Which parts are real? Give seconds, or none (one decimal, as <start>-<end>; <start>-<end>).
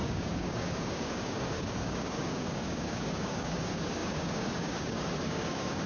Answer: none